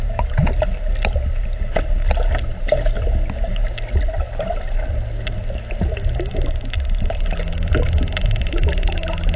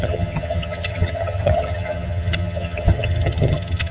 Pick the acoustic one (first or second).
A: first